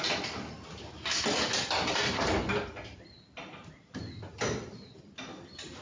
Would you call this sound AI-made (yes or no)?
no